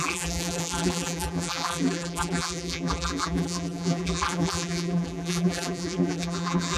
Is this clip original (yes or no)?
no